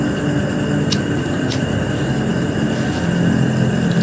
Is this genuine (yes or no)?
yes